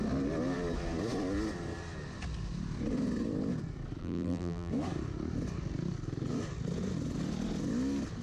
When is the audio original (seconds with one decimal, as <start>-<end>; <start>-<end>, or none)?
0.0-4.0; 4.7-8.2